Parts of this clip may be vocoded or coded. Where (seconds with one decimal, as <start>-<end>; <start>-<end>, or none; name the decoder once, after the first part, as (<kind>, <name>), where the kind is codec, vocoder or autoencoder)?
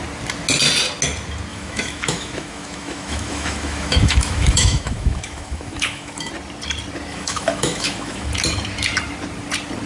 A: 1.5-6.3 (autoencoder, DAC-VAE); 7.1-8.3